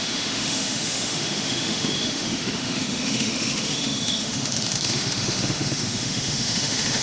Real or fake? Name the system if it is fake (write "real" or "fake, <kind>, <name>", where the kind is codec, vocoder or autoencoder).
fake, autoencoder, DAC-VAE